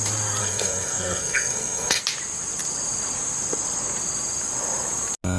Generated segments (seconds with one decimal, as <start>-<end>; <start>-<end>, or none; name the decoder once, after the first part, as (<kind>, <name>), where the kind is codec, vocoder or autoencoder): 0.4-2.0 (codec, SNAC)